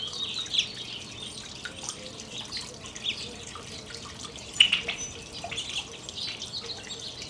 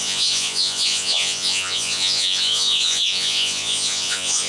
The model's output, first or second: second